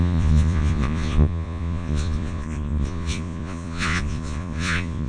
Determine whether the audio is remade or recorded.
remade